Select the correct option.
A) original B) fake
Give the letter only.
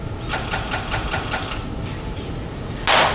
B